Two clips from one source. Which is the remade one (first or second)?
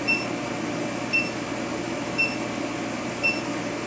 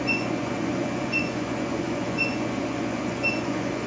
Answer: second